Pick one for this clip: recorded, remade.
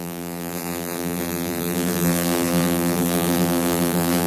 remade